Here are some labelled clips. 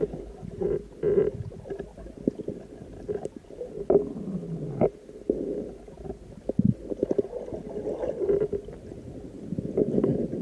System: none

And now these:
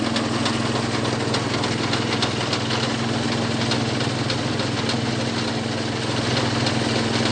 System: none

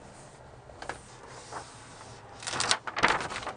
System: none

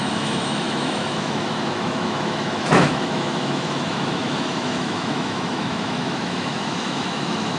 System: autoencoder, DAC-VAE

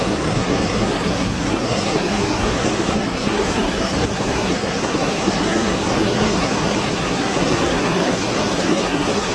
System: codec, SNAC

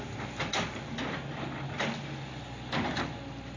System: none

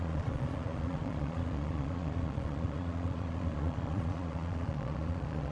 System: vocoder, Vocos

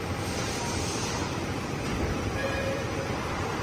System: vocoder, BigVGAN v2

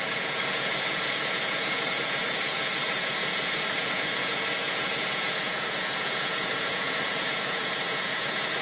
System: vocoder, Vocos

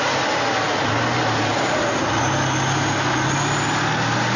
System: none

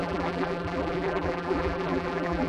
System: vocoder, BigVGAN v2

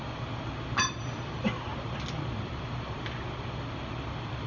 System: none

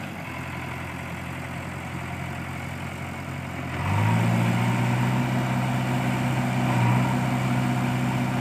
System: none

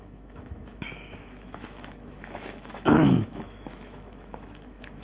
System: autoencoder, DAC-VAE